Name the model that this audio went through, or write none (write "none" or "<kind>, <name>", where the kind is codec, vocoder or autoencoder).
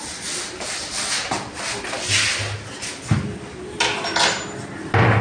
none